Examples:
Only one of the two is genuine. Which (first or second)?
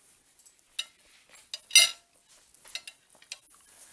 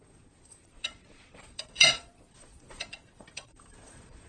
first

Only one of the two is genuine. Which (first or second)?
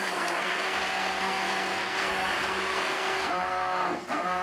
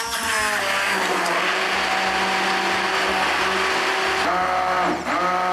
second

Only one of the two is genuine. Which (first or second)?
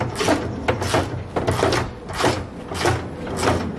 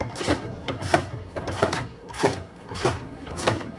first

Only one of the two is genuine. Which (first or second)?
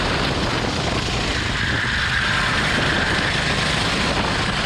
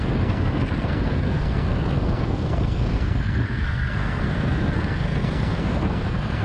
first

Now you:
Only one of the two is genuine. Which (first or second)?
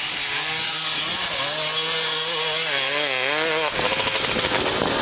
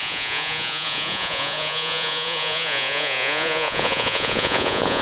first